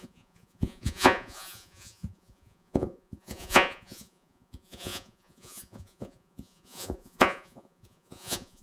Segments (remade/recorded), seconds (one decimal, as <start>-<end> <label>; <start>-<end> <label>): 0.0-8.6 remade